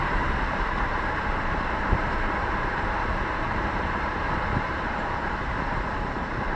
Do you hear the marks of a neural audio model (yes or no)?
yes